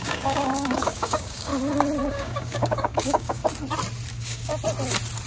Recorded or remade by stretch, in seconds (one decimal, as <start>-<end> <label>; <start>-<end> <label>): 0.0-1.5 remade; 1.5-2.1 recorded; 2.1-3.4 remade; 3.4-4.1 recorded; 4.1-4.5 remade; 4.5-5.3 recorded